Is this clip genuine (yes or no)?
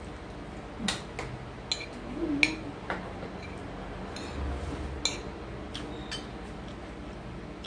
yes